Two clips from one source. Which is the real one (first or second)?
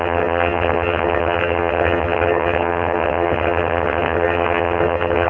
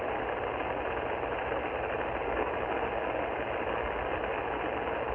second